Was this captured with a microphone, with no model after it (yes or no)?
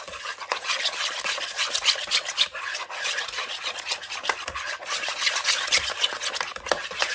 yes